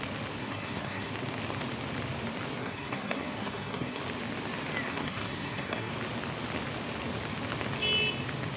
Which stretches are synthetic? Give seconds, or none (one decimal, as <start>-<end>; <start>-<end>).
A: 0.4-1.1; 2.6-4.0; 4.9-5.9